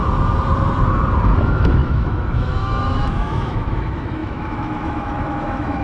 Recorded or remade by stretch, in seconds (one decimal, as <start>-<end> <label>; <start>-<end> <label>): 0.0-1.4 recorded; 1.4-5.8 remade